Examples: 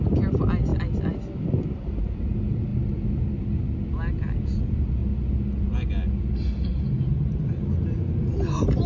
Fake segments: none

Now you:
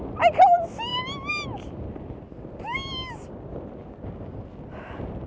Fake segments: none

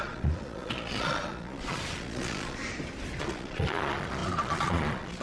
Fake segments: 0.0-2.6; 3.2-5.2

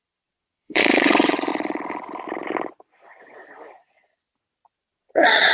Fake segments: 0.0-1.5; 4.8-5.5

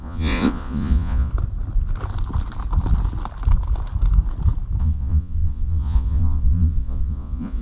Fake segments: 0.0-1.3; 4.8-7.6

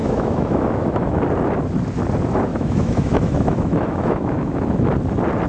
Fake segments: 0.0-1.2; 2.5-4.6

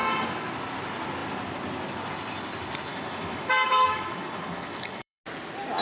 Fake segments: 2.9-5.2

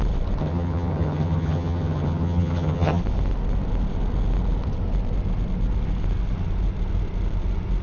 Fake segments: 0.4-3.0